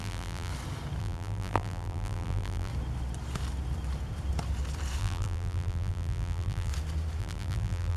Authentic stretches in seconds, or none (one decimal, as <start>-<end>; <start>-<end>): 0.5-1.0; 2.7-5.0; 6.7-7.2